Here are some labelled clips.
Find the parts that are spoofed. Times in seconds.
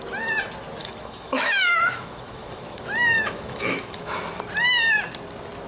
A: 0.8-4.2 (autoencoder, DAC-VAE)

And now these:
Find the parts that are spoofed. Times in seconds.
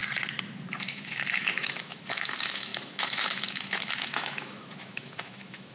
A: 0.8-5.7 (autoencoder, DAC-VAE)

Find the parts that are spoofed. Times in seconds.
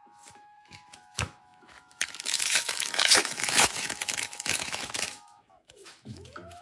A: 0.0-6.6 (autoencoder, DAC-VAE)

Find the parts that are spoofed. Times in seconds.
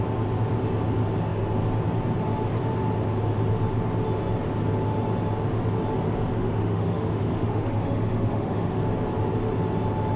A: 6.3-8.7 (autoencoder, DAC-VAE)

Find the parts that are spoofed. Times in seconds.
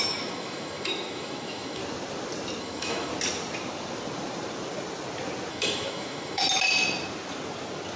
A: 0.0-1.8 (autoencoder, DAC-VAE); 2.6-3.1; 5.5-6.4